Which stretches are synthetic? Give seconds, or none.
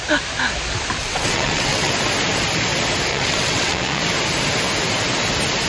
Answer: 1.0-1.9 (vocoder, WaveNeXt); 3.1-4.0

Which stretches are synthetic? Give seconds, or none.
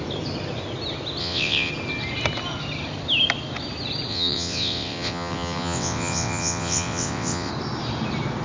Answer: 1.2-1.7 (vocoder, WaveNeXt); 4.1-7.5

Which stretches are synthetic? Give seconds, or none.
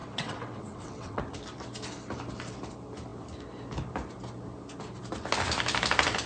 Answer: 0.0-1.2 (vocoder, WaveNeXt)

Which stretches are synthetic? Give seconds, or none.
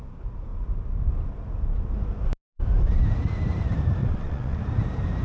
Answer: 4.0-4.6 (vocoder, WaveNeXt)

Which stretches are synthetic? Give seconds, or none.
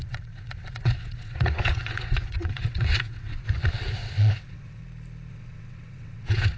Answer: 0.0-4.8 (vocoder, WaveNeXt); 5.3-6.6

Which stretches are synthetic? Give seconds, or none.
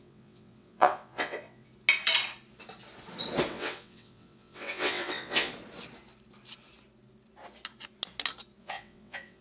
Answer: 0.0-1.7 (vocoder, WaveNeXt); 3.5-5.5; 8.6-9.4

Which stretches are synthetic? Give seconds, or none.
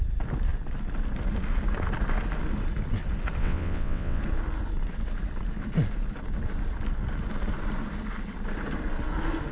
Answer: 3.4-4.2 (vocoder, WaveNeXt)